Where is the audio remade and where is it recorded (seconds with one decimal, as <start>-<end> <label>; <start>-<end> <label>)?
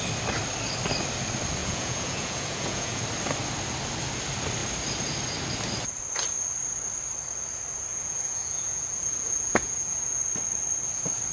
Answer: 0.0-1.6 recorded; 1.6-3.0 remade; 3.0-7.9 recorded; 7.9-10.2 remade; 10.2-11.3 recorded